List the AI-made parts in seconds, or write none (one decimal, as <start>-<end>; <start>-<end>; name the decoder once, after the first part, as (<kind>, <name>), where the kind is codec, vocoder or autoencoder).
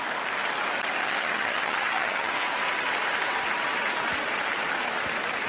1.0-2.3 (vocoder, HiFi-GAN)